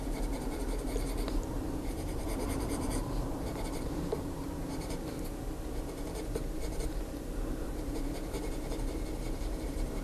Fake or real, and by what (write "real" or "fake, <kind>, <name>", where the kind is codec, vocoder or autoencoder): fake, vocoder, BigVGAN v2